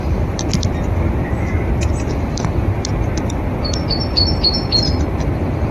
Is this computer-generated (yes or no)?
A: no